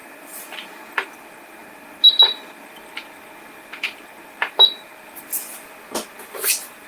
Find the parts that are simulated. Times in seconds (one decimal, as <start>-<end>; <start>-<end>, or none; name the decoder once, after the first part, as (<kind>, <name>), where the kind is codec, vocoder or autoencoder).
0.0-0.8 (vocoder, BigVGAN v2)